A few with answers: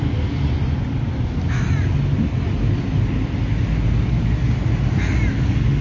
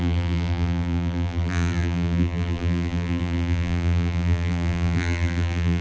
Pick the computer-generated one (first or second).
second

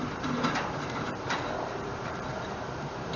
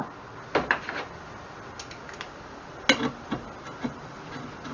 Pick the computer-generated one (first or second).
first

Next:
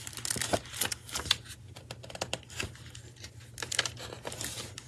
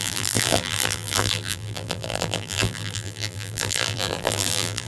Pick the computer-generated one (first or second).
second